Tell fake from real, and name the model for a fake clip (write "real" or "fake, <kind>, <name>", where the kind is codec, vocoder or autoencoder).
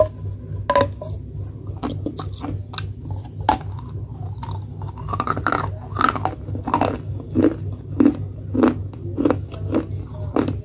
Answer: real